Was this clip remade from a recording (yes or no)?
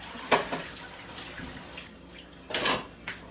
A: no